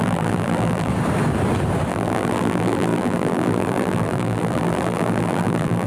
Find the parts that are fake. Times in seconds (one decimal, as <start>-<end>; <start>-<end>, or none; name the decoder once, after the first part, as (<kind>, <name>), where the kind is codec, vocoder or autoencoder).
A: 0.0-0.9 (vocoder, BigVGAN v2); 1.9-5.9